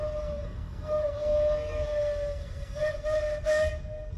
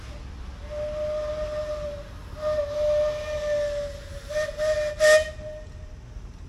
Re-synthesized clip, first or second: first